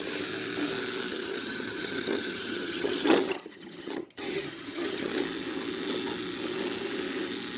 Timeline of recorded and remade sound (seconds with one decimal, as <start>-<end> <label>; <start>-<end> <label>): 0.0-1.1 recorded; 1.1-5.1 remade; 5.1-7.6 recorded